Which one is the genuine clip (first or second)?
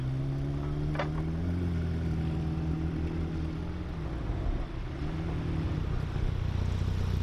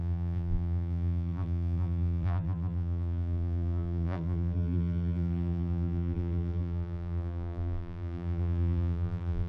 first